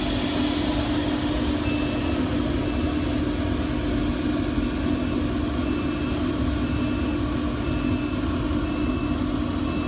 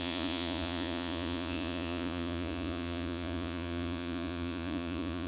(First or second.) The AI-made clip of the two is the second